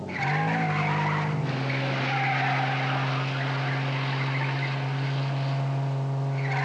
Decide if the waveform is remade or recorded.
recorded